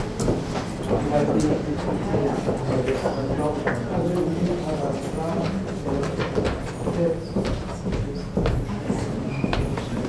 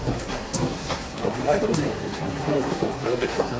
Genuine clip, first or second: first